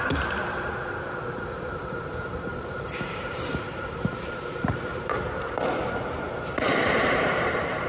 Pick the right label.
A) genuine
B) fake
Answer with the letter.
B